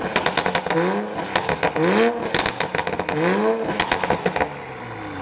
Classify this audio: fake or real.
real